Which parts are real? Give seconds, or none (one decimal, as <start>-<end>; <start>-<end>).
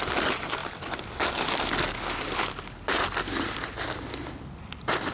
0.0-5.1